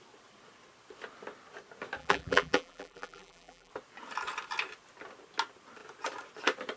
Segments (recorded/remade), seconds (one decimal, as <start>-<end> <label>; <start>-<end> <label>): 0.0-2.0 recorded; 2.0-3.7 remade; 3.7-6.8 recorded